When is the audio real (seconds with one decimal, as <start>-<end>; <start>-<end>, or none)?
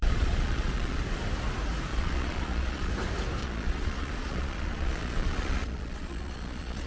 1.0-1.9; 2.9-3.4